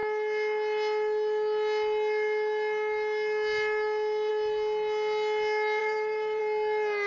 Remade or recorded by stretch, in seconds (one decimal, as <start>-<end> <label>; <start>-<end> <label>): 0.0-5.8 recorded; 5.8-6.4 remade; 6.4-7.1 recorded